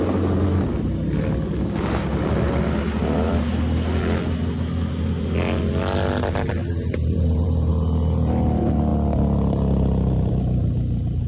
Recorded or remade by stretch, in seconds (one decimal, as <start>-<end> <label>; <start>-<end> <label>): 0.0-6.6 recorded; 6.6-7.7 remade; 7.7-11.3 recorded